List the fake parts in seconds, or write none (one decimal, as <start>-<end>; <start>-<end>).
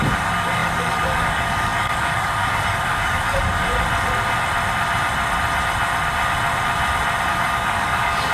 0.0-3.7; 7.3-8.3